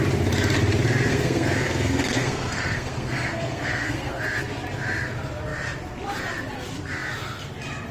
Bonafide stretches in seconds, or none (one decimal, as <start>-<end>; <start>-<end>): 0.0-1.1; 4.2-7.9